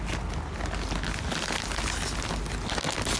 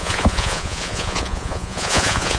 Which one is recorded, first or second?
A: first